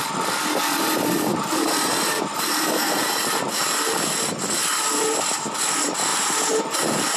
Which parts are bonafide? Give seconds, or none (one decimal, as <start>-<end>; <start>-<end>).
0.0-1.3; 3.1-6.1